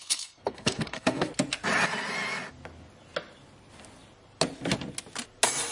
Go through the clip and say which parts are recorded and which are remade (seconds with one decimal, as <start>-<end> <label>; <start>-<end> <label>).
0.0-1.3 remade; 1.3-5.7 recorded